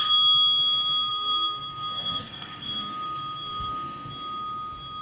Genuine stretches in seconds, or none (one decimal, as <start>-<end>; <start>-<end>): 0.0-1.1; 4.1-5.0